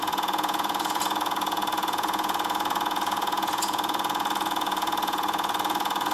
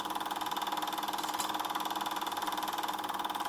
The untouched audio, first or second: second